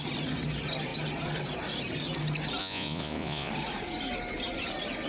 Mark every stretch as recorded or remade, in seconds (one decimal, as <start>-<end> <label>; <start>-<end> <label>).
0.0-2.6 recorded; 2.6-3.5 remade; 3.5-5.1 recorded